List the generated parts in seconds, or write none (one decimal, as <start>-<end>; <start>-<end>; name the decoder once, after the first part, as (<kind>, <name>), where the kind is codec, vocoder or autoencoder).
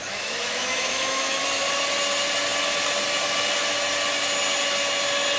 0.0-1.4 (autoencoder, DAC-VAE)